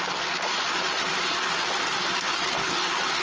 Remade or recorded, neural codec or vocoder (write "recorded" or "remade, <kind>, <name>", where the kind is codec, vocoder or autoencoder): recorded